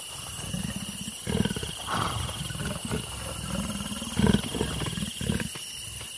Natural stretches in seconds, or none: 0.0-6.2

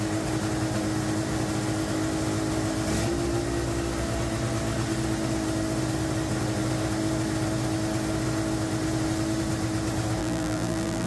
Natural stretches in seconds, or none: 0.0-10.2

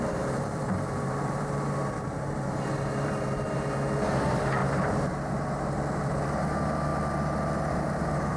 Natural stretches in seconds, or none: 4.6-6.0; 6.9-7.7

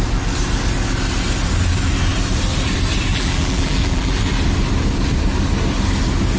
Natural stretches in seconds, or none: 0.0-3.1; 4.2-6.4

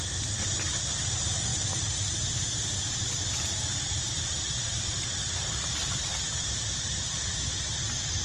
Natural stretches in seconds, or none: 6.1-6.8

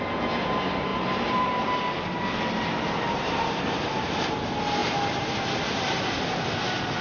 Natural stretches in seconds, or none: 0.0-0.9; 4.3-4.8; 6.3-7.0

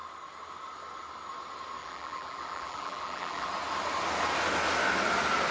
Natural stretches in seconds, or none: 0.0-1.8; 3.5-5.5

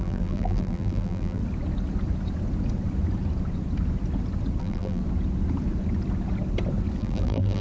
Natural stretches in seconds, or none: 1.4-4.6; 5.0-7.0